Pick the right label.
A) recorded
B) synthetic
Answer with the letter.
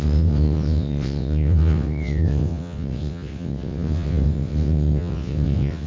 B